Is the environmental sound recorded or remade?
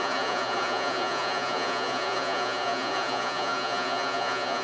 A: remade